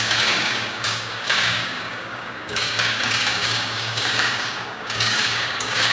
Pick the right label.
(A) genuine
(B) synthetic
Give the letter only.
B